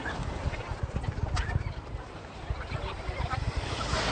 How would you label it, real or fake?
real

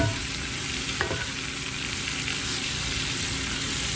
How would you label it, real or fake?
fake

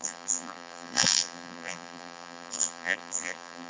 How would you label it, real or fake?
fake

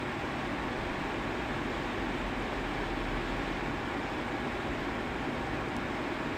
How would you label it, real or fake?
real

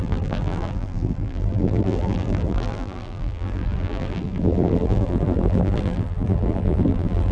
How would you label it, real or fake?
fake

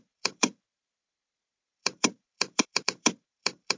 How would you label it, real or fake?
fake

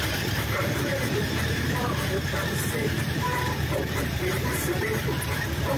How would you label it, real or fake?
fake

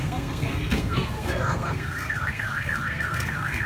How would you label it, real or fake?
fake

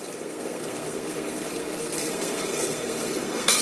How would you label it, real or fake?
fake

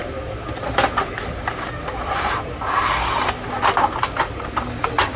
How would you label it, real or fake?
real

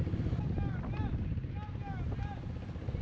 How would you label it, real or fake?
real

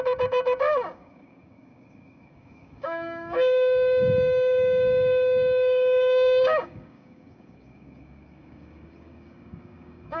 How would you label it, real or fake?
fake